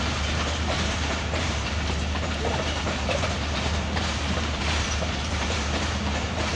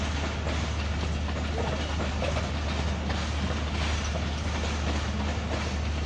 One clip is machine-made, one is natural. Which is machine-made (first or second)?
first